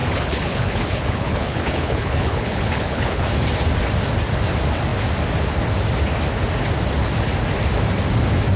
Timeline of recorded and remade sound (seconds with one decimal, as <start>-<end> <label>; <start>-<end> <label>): 0.0-3.3 remade; 3.3-8.6 recorded